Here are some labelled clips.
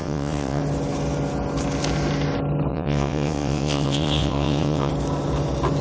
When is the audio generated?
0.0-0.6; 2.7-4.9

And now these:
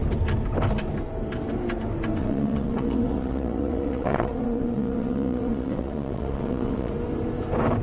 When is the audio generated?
2.2-6.9

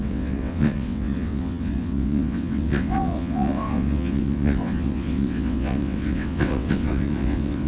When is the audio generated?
0.0-7.7

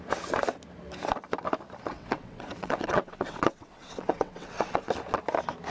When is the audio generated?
1.9-4.9

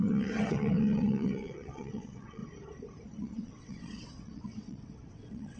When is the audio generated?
0.0-2.4; 3.2-5.6

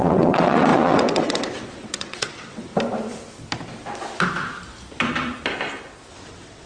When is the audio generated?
0.0-2.7; 6.1-6.7